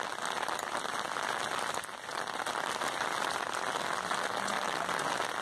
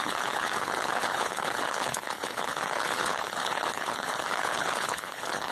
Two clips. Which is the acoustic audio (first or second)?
first